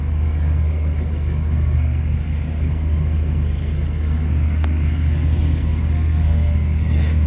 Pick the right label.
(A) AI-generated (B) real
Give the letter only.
A